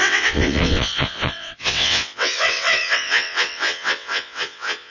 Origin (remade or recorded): remade